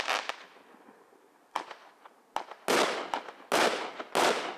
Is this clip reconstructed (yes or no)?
no